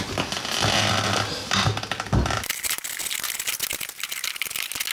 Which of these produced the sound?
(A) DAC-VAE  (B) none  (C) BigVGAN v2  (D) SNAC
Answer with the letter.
B